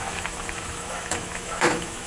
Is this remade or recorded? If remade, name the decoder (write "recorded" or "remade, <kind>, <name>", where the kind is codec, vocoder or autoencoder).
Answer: remade, autoencoder, DAC-VAE